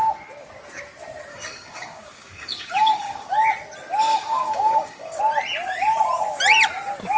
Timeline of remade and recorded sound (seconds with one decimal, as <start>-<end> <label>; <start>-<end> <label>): 0.0-1.3 recorded; 1.3-3.3 remade; 3.3-4.1 recorded; 4.1-5.2 remade; 5.2-7.2 recorded